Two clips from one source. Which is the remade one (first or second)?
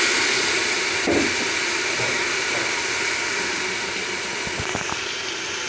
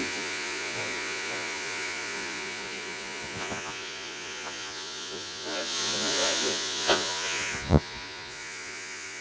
second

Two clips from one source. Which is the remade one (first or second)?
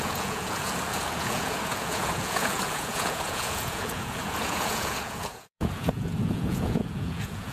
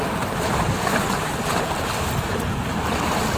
first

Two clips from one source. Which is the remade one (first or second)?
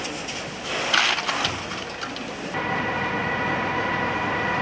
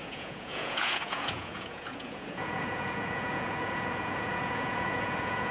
second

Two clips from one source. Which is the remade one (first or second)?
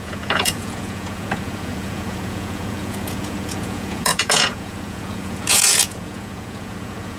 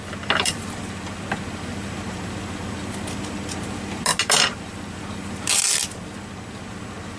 first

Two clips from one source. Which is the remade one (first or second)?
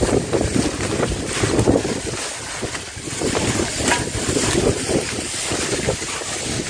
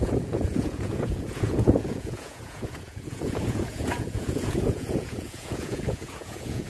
second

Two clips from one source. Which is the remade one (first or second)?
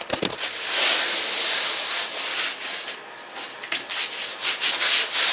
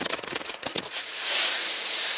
second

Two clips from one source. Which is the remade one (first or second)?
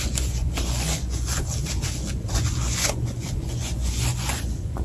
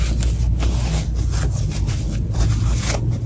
first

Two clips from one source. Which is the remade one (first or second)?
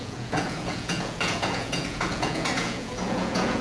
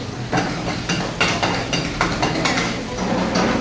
first